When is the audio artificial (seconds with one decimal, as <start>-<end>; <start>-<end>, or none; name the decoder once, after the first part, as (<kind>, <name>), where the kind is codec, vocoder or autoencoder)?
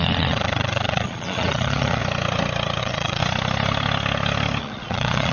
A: 0.0-2.0 (vocoder, Vocos); 2.8-3.2; 4.6-5.3